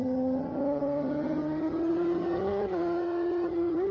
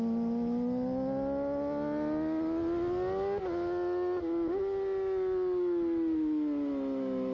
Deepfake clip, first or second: first